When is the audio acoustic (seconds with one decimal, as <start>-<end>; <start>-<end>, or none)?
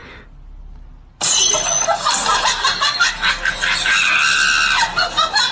0.0-5.5